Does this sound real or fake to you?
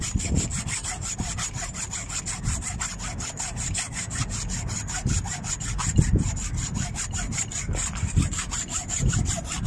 real